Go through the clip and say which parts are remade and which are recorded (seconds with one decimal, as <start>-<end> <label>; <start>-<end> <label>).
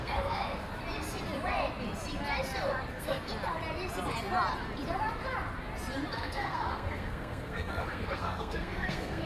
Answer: 0.0-0.7 remade; 0.7-2.9 recorded; 2.9-3.3 remade; 3.3-6.1 recorded; 6.1-9.3 remade